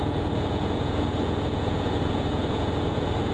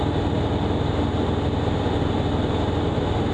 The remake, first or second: first